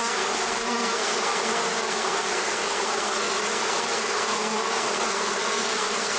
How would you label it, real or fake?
fake